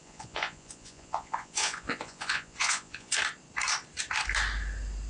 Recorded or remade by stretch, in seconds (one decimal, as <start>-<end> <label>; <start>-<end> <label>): 0.0-3.1 remade; 3.1-5.1 recorded